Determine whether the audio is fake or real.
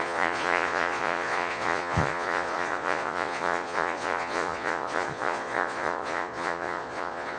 fake